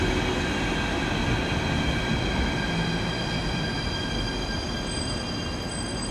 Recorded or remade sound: recorded